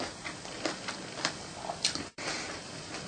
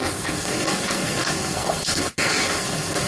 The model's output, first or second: second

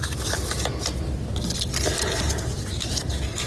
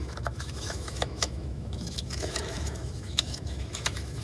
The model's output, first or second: second